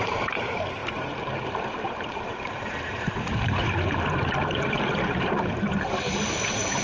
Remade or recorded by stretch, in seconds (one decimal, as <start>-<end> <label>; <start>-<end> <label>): 0.0-3.6 remade; 3.6-5.0 recorded; 5.0-6.8 remade